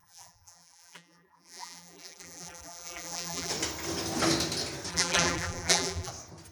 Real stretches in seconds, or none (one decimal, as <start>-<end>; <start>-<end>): 3.5-4.9; 6.1-6.5